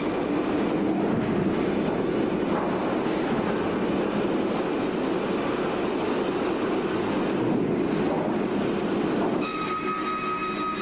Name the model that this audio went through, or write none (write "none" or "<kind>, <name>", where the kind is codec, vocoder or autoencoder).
none